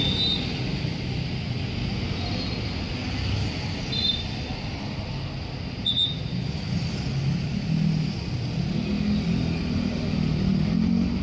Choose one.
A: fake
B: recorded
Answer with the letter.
B